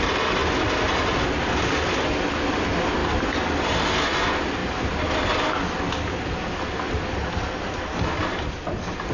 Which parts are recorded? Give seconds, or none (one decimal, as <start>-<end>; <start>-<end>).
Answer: 0.0-9.1